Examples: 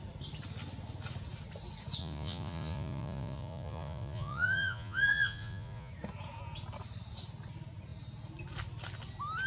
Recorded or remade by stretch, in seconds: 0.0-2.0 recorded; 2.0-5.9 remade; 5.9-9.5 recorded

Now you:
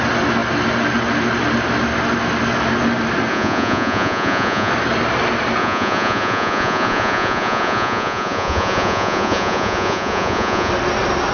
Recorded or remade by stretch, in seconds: 0.0-3.3 recorded; 3.3-4.7 remade; 4.7-5.6 recorded; 5.6-10.7 remade; 10.7-11.3 recorded

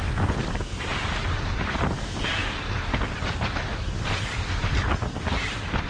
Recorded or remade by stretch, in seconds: 0.0-5.9 recorded

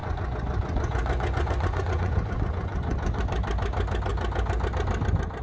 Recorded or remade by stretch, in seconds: 0.0-3.2 remade; 3.2-5.4 recorded

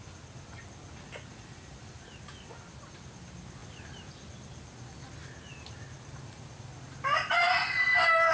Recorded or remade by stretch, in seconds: 0.0-8.3 recorded

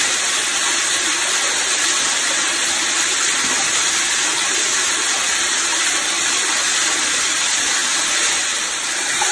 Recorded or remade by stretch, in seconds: 0.0-9.3 recorded

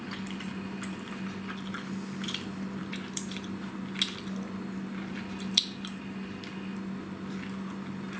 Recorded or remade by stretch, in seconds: 0.0-8.2 recorded

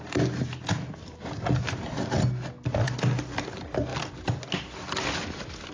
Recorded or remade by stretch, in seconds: 0.0-5.7 recorded